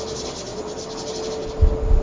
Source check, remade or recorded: recorded